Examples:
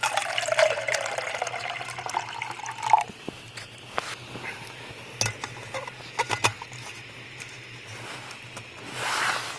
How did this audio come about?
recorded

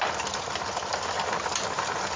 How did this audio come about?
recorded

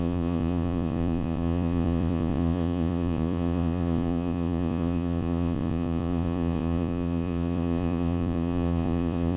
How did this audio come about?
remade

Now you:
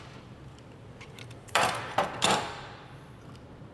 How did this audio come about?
remade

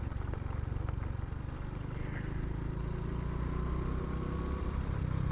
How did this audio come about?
recorded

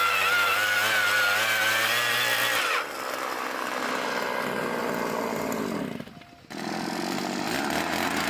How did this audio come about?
recorded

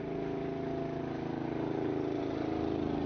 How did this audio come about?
recorded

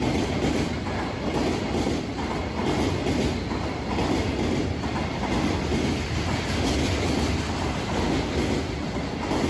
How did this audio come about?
recorded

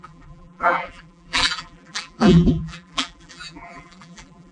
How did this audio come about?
remade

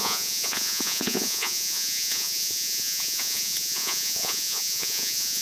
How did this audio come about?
remade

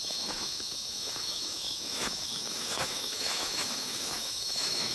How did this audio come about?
remade